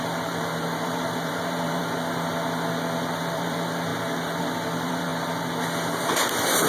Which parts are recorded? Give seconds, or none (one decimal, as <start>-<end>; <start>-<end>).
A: 1.8-3.2; 3.9-4.4; 5.1-6.0